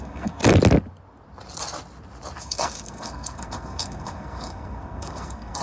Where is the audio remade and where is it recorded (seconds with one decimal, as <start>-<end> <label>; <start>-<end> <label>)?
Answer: 0.0-0.4 remade; 0.4-2.4 recorded; 2.4-5.6 remade